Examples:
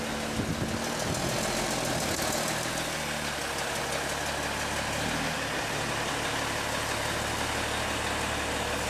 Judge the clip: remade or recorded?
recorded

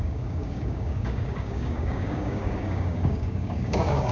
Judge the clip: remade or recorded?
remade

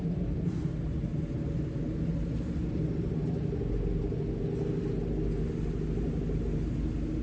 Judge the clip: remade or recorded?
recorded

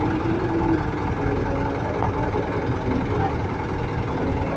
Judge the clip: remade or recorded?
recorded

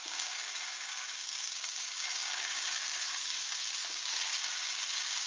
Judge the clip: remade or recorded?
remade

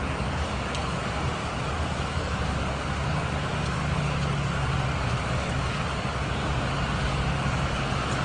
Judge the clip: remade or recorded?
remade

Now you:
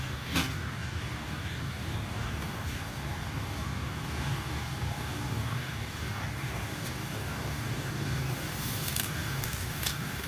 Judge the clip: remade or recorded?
remade